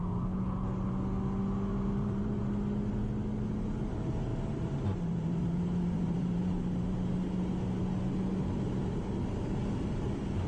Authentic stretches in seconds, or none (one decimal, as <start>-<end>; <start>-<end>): 0.0-1.7; 2.4-4.3; 6.5-10.5